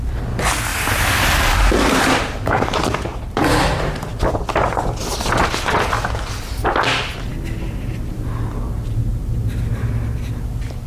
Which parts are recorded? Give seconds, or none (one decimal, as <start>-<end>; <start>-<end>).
0.0-0.7; 4.3-10.9